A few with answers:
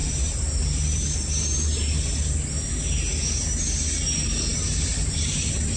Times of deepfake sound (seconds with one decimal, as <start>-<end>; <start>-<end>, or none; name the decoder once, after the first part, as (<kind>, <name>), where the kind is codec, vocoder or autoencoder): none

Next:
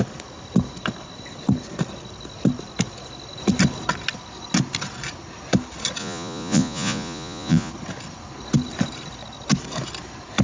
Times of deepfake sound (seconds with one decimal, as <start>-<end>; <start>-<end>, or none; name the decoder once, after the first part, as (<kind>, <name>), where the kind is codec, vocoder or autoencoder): 6.0-7.7 (vocoder, Vocos)

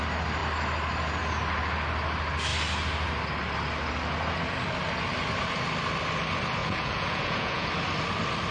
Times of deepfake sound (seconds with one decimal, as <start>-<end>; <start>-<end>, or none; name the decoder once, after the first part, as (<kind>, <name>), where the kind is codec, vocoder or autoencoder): 6.6-7.7 (vocoder, Vocos)

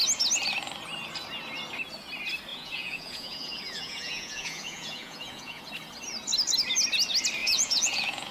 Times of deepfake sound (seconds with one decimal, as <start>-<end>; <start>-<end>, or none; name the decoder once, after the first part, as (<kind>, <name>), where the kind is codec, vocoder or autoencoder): 2.5-5.6 (vocoder, Vocos); 7.4-8.3

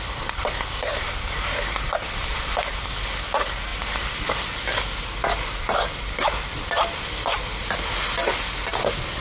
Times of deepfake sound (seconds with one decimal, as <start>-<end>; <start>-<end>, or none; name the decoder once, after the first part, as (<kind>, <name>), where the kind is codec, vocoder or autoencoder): none

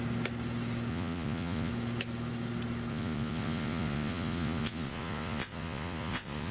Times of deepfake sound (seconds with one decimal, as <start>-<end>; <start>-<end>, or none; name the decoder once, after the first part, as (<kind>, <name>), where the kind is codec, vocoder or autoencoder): 0.9-1.7 (vocoder, Vocos); 2.9-6.5

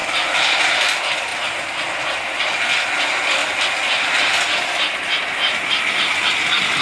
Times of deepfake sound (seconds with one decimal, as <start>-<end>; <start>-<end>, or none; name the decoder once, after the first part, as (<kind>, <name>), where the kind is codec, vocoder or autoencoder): none

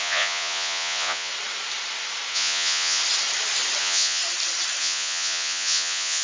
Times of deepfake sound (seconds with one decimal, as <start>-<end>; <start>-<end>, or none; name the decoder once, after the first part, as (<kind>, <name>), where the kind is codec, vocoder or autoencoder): 0.0-1.3 (vocoder, Vocos); 2.3-3.0; 3.8-4.2; 4.8-6.2